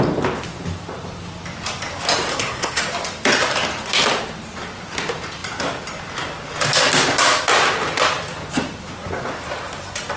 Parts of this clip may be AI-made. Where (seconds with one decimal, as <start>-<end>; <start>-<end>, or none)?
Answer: 2.3-2.8

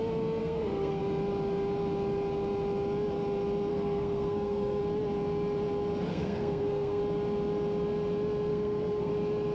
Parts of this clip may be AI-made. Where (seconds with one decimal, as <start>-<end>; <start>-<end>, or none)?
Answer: 0.4-1.0; 3.7-4.8; 6.1-7.0; 8.5-9.1

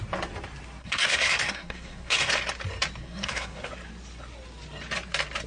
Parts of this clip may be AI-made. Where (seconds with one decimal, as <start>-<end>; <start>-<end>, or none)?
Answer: 0.8-2.3; 3.0-3.7

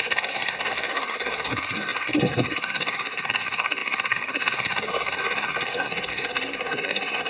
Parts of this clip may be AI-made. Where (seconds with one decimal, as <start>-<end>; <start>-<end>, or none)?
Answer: 0.0-7.3